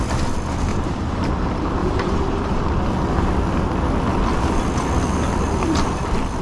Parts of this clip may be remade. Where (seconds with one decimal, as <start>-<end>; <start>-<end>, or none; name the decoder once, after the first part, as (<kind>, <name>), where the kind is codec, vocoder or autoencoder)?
0.7-1.3 (vocoder, BigVGAN v2); 1.8-2.7